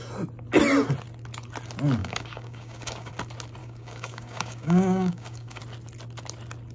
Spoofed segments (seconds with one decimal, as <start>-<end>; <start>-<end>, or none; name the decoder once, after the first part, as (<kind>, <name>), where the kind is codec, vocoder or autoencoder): 2.0-3.1 (codec, DAC); 3.6-5.6